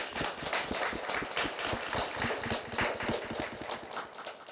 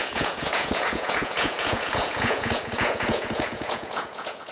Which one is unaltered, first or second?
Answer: first